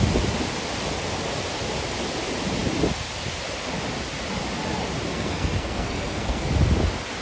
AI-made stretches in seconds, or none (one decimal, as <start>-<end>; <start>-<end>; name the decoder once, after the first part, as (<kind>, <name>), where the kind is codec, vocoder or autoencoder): 5.1-6.5 (codec, SNAC)